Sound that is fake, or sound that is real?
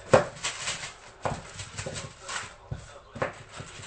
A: real